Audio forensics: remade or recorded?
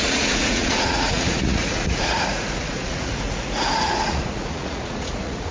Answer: remade